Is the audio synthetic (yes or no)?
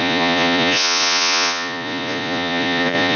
yes